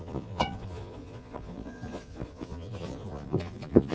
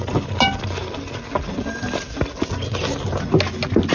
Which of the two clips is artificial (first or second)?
first